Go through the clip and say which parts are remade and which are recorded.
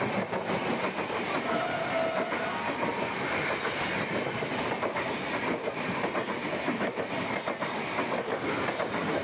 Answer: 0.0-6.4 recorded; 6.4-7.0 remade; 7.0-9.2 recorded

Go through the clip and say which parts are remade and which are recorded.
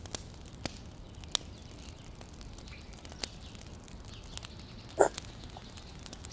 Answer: 0.0-6.3 recorded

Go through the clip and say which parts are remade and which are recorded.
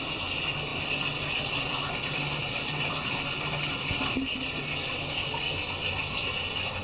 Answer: 0.0-0.7 recorded; 0.7-4.0 remade; 4.0-6.8 recorded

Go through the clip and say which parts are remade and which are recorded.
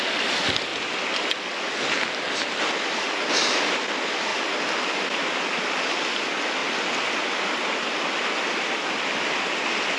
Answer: 0.0-10.0 recorded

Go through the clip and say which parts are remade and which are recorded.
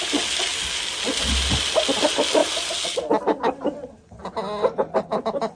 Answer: 0.0-5.6 recorded